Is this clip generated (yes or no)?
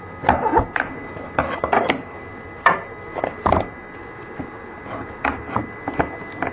no